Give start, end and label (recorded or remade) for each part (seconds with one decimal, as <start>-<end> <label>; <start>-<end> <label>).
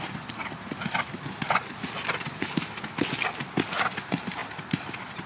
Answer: 0.0-5.3 recorded